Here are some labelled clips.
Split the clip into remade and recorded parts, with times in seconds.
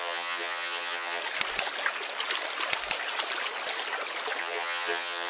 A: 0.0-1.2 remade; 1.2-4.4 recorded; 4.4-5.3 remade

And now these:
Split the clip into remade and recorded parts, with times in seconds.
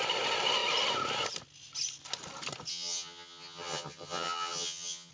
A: 0.0-2.7 recorded; 2.7-5.1 remade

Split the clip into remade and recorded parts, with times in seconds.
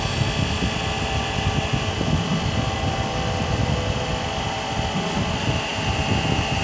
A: 0.0-6.6 recorded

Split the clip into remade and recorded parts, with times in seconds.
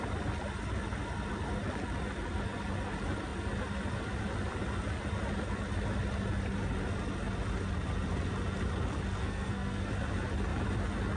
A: 0.0-9.2 recorded; 9.2-9.9 remade; 9.9-11.2 recorded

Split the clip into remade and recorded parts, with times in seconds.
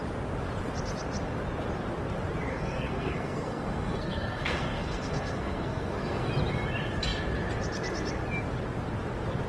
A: 0.0-2.5 recorded; 2.5-6.3 remade; 6.3-9.5 recorded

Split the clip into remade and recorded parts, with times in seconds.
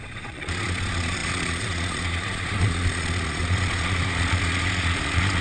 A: 0.0-5.4 remade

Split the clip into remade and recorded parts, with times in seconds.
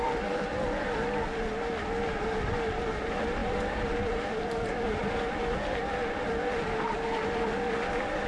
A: 0.0-8.3 recorded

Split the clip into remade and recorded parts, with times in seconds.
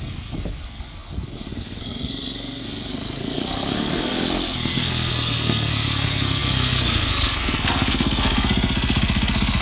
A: 0.0-9.6 remade